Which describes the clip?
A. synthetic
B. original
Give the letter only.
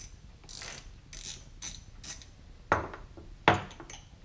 B